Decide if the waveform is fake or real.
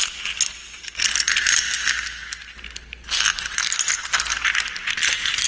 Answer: real